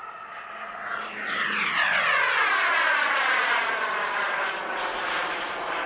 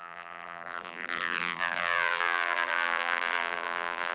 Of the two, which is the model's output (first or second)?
second